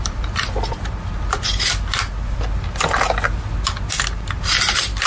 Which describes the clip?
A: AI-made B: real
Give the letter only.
B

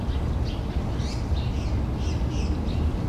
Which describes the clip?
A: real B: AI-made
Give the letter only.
A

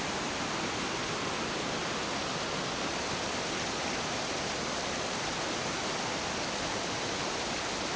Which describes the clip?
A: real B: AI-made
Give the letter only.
A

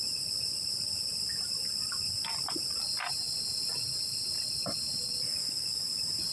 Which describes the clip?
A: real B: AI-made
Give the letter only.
A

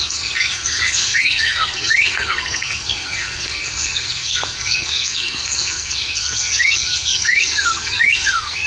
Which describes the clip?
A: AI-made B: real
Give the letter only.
A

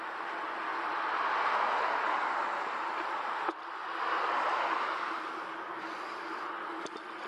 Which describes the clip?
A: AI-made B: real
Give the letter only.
B